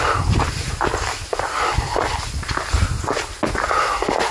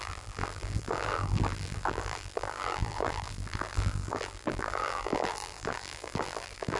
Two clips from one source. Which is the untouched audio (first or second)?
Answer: first